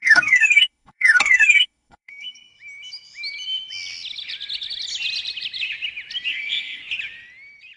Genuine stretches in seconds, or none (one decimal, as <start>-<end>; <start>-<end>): 2.5-6.3; 6.8-7.8